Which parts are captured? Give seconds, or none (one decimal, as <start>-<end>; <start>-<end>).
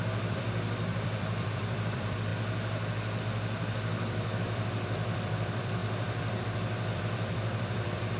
2.3-3.2